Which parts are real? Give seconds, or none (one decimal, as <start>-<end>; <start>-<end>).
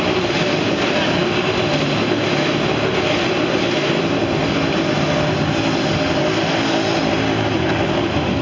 0.0-8.4